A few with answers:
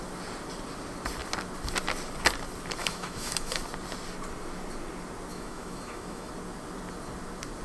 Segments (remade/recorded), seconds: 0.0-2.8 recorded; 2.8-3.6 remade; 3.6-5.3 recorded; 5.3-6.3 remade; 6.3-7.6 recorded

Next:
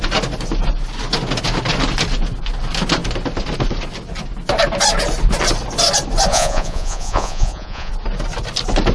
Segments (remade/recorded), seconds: 0.0-6.3 recorded; 6.3-7.9 remade; 7.9-8.9 recorded

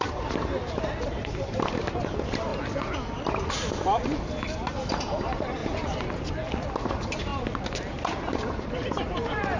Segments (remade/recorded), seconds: 0.0-2.5 remade; 2.5-4.9 recorded; 4.9-5.6 remade; 5.6-6.8 recorded; 6.8-7.3 remade; 7.3-8.3 recorded; 8.3-9.6 remade